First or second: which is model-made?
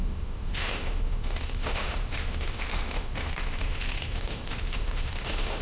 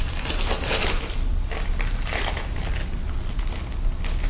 first